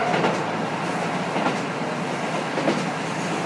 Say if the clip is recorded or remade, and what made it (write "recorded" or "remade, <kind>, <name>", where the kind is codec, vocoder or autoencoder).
recorded